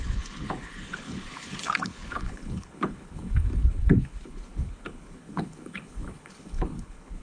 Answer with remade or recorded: remade